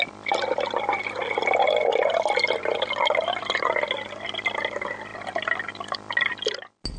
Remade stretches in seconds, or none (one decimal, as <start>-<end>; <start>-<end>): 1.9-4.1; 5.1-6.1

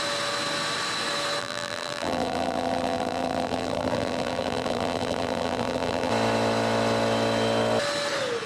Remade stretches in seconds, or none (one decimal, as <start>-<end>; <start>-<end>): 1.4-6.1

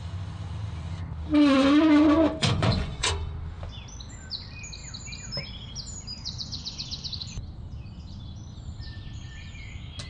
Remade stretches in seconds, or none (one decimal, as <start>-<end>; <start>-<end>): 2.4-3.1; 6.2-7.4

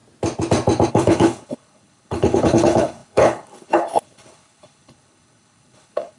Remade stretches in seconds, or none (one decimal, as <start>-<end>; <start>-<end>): 0.9-6.2

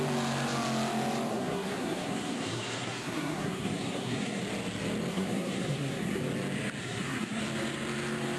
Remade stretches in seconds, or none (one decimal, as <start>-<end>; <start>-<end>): 1.3-4.4; 5.1-6.2; 6.8-7.4